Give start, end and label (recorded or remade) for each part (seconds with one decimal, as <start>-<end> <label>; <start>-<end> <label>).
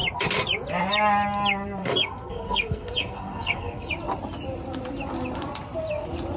0.0-1.8 recorded; 1.8-3.9 remade; 3.9-6.4 recorded